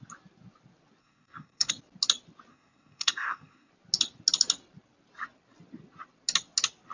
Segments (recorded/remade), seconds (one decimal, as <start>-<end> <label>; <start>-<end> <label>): 0.0-1.0 recorded; 1.0-1.7 remade; 1.7-2.5 recorded; 2.5-3.7 remade; 3.7-6.9 recorded